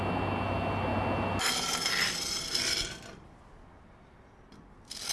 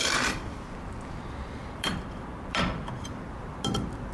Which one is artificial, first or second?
second